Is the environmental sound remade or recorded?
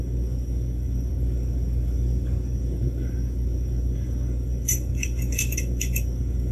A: remade